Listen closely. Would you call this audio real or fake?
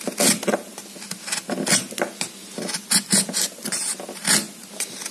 real